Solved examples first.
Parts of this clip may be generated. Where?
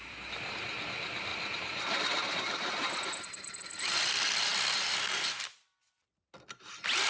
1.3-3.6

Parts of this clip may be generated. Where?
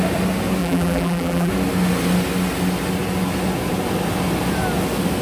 0.6-1.5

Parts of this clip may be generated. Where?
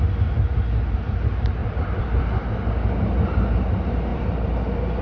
1.6-2.5; 4.1-5.0